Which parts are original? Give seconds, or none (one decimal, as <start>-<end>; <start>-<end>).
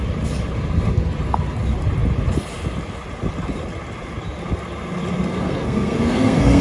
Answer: 0.0-5.3